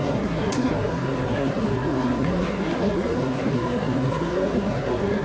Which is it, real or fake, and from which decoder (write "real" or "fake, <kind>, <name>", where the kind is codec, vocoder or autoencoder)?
fake, codec, SNAC